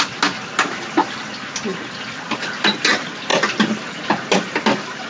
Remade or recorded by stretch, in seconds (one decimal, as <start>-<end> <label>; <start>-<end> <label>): 0.0-5.1 recorded

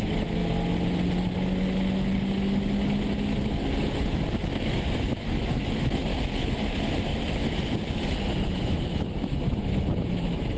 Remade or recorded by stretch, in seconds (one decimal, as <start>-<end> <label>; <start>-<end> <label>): 0.0-0.4 remade; 0.4-4.1 recorded; 4.1-6.1 remade; 6.1-8.7 recorded; 8.7-10.6 remade

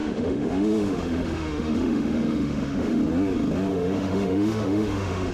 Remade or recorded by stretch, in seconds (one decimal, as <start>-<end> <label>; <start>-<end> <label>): 0.0-3.0 remade; 3.0-3.7 recorded; 3.7-5.3 remade

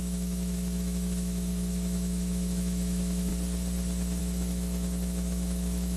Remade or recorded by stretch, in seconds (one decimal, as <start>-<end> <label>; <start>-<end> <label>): 0.0-3.3 remade; 3.3-4.2 recorded; 4.2-6.0 remade

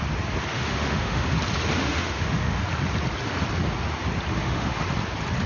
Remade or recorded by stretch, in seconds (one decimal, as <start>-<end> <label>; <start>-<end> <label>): 0.0-0.5 recorded; 0.5-1.3 remade; 1.3-1.8 recorded; 1.8-2.6 remade; 2.6-4.3 recorded; 4.3-4.8 remade; 4.8-5.5 recorded

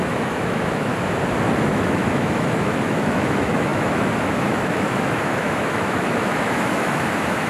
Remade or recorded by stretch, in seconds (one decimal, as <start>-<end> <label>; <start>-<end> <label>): 0.0-0.9 remade; 0.9-1.7 recorded; 1.7-7.5 remade

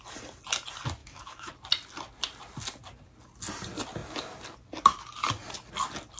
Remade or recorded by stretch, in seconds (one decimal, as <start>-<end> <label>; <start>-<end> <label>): 0.0-1.0 recorded; 1.0-1.5 remade; 1.5-6.2 recorded

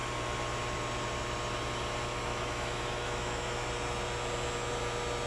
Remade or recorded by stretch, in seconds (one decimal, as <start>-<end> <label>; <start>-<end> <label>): 0.0-2.3 recorded; 2.3-3.7 remade; 3.7-5.3 recorded